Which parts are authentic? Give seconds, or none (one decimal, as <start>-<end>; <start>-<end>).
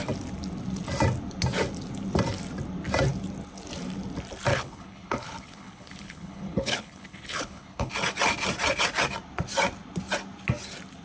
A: 0.0-4.5; 7.9-11.0